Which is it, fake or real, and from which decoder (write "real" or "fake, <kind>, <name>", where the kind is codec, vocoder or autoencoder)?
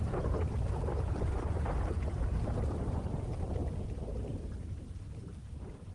real